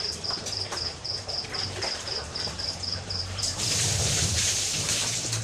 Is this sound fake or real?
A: fake